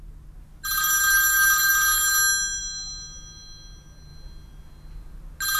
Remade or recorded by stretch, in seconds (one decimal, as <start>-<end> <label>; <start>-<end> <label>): 0.0-5.6 recorded